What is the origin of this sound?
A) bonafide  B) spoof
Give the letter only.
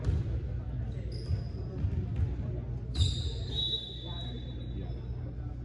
A